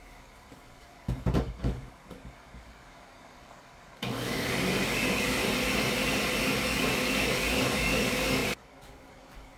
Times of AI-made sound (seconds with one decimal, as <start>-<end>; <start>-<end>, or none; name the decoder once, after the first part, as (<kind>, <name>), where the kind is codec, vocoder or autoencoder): 0.0-5.4 (codec, DAC); 6.4-9.6